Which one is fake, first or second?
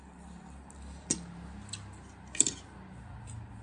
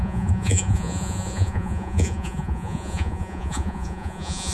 second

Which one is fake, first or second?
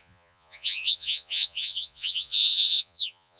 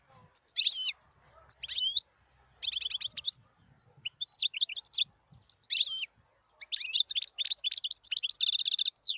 first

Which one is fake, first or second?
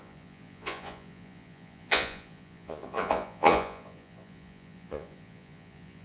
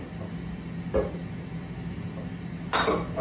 first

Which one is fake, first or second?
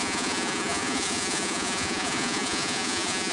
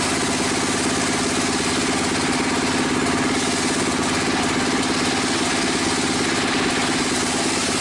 first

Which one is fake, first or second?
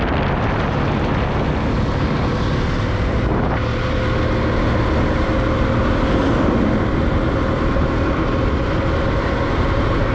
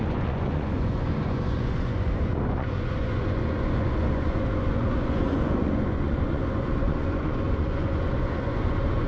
second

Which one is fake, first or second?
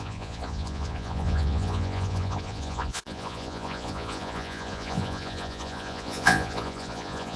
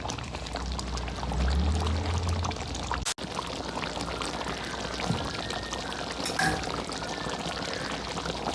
first